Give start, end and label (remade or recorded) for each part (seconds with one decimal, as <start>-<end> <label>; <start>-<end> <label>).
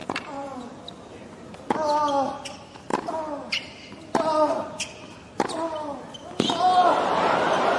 0.0-0.8 remade; 0.8-7.8 recorded